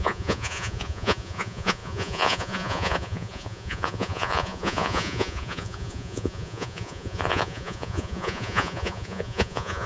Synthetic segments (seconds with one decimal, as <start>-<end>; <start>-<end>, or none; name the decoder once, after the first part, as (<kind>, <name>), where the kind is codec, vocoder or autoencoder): 0.0-9.9 (vocoder, Vocos)

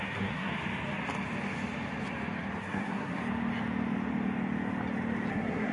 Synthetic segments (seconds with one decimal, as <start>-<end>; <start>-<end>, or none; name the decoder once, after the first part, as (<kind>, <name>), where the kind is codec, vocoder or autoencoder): 0.0-0.5 (codec, SNAC); 2.6-3.2; 5.3-5.7

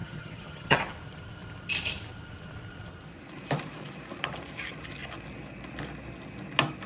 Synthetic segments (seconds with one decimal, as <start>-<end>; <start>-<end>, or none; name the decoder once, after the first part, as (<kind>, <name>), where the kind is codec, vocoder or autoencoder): 0.0-0.8 (vocoder, HiFi-GAN)